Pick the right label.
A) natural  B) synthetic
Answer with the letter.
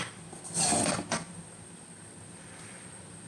A